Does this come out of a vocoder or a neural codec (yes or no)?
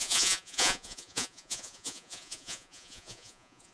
yes